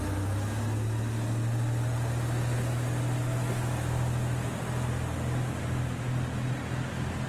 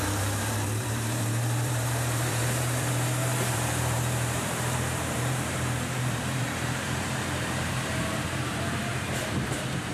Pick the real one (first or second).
first